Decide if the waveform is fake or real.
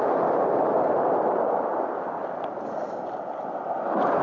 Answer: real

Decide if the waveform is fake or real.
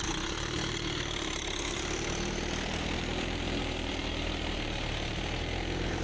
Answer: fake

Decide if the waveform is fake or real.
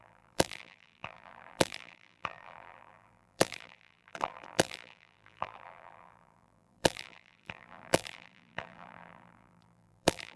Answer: fake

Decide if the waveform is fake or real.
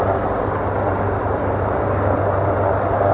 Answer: real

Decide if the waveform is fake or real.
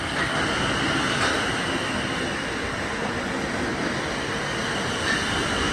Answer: real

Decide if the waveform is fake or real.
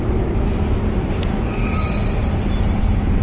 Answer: fake